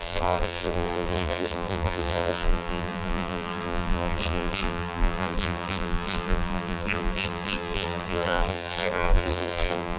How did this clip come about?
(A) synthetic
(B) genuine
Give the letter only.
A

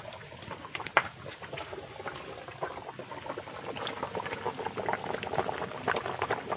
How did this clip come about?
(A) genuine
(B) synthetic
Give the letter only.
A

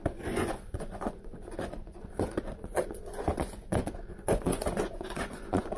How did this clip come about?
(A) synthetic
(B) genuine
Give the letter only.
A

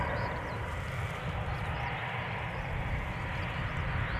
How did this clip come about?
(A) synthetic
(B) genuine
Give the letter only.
B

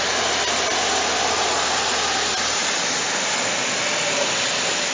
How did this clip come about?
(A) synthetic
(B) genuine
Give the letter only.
B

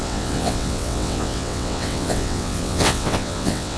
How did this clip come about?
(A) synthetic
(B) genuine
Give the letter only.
A